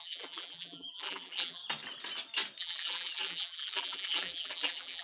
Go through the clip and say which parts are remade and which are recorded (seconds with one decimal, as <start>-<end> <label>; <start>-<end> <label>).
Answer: 0.0-1.6 remade; 1.6-2.6 recorded; 2.6-5.0 remade